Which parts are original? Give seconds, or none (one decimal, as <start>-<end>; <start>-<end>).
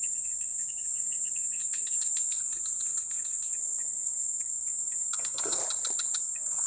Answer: 5.6-6.2